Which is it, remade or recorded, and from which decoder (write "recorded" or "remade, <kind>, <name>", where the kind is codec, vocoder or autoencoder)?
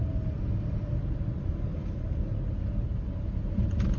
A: recorded